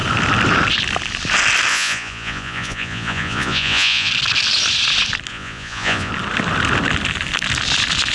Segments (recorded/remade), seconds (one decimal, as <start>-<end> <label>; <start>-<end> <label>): 0.0-1.7 recorded; 1.7-4.1 remade; 4.1-5.3 recorded; 5.3-6.1 remade; 6.1-8.1 recorded